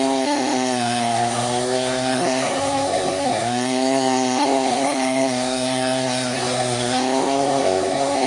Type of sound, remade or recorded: remade